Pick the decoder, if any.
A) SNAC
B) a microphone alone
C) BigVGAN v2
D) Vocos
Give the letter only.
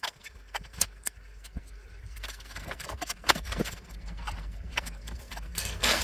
A